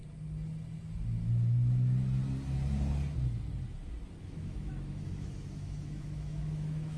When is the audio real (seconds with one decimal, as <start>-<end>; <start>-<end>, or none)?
0.0-4.2